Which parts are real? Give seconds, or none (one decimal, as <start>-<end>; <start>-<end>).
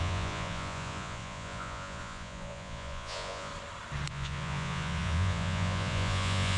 3.5-4.1